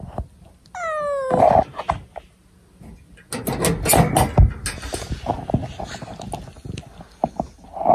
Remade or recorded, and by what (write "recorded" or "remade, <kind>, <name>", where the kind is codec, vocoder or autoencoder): recorded